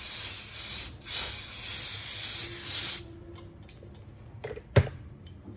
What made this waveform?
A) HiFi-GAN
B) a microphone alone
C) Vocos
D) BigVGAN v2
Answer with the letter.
B